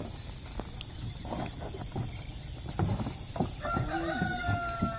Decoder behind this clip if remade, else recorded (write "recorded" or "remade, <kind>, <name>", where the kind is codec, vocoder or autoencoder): recorded